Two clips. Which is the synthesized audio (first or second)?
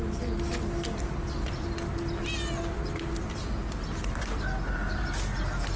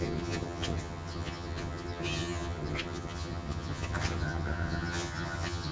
second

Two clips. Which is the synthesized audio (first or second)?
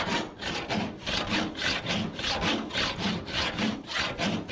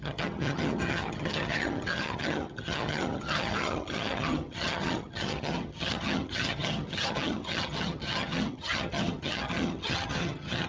second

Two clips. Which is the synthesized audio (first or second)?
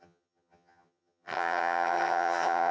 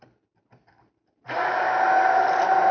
first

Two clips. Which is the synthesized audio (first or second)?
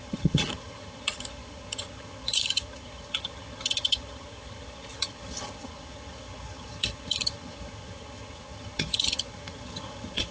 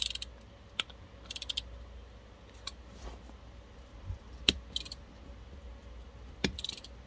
first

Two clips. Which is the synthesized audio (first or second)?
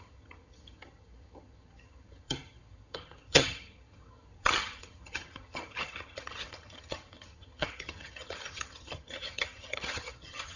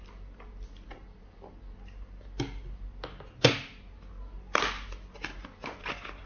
first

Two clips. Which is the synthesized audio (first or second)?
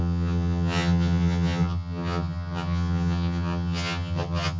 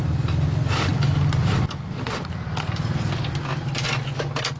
first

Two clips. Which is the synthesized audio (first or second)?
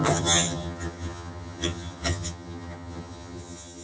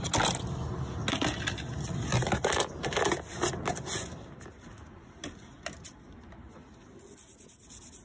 first